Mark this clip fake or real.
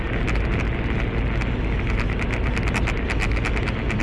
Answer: real